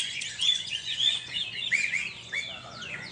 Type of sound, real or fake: fake